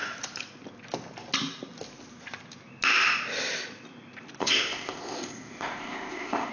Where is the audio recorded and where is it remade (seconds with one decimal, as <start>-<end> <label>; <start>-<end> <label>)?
0.0-4.4 recorded; 4.4-6.5 remade